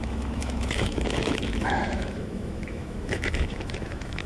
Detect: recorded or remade remade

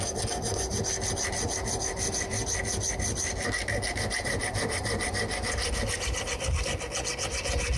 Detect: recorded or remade recorded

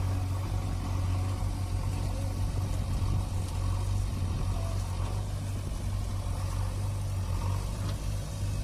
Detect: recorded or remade recorded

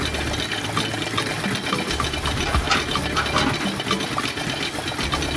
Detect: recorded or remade recorded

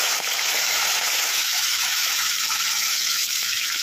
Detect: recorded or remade remade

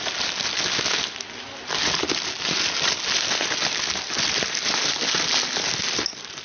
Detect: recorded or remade recorded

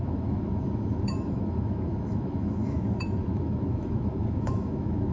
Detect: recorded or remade remade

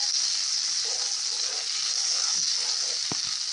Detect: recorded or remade recorded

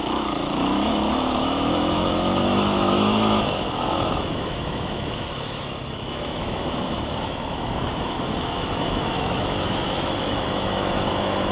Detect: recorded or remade remade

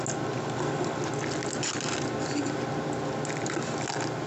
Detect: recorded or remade recorded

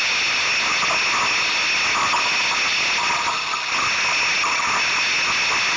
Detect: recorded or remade recorded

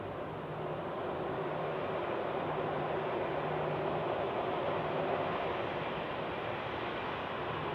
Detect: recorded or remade recorded